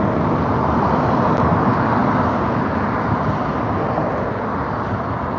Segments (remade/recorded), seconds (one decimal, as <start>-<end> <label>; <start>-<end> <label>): 0.0-5.4 recorded